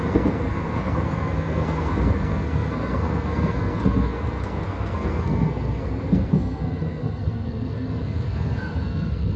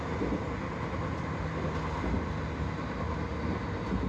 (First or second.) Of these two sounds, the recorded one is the second